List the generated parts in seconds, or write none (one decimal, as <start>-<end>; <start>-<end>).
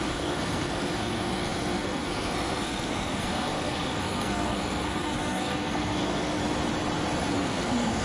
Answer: 0.0-6.4; 7.3-8.0